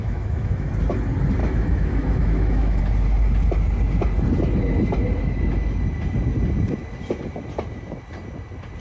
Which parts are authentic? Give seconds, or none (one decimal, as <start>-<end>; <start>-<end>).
0.7-1.4; 2.8-8.8

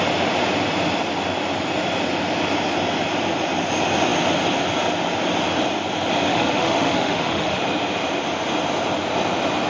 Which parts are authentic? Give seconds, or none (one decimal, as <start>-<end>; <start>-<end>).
0.0-6.3; 7.6-9.7

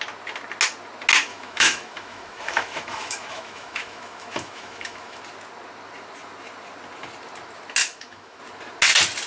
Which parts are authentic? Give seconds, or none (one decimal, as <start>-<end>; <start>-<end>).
0.0-1.3; 5.2-7.8; 8.4-9.3

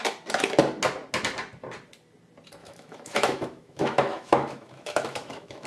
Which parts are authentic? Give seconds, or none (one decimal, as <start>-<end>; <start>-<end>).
0.0-2.6

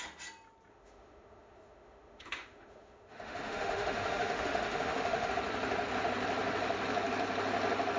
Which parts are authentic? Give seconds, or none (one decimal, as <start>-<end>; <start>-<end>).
0.0-0.7; 5.3-8.0

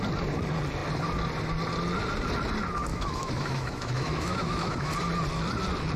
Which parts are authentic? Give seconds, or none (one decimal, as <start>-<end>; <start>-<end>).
0.0-2.9; 4.9-6.0

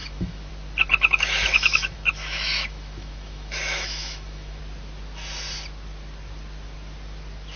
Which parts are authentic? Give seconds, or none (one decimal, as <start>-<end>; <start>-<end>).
0.5-0.9; 4.6-7.6

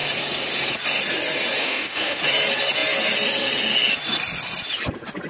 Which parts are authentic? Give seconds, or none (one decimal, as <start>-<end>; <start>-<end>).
0.0-1.6; 2.2-5.3